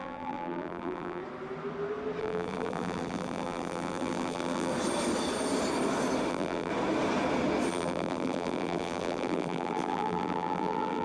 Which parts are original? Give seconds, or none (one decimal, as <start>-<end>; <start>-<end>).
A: 1.2-2.2; 4.7-6.3; 6.7-7.7